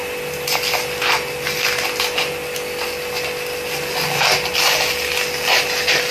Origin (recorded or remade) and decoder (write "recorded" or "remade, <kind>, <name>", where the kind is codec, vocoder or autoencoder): recorded